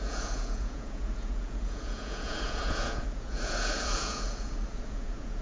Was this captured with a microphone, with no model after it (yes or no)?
no